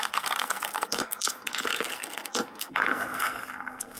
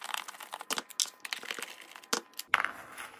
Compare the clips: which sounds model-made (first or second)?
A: first